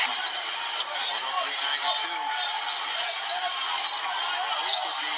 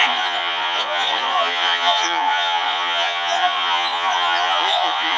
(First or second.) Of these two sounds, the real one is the first